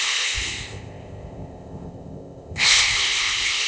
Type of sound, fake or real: fake